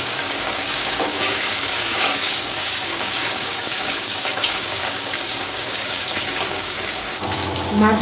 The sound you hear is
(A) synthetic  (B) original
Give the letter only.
A